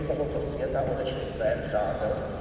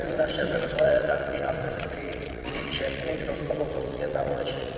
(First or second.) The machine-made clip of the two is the second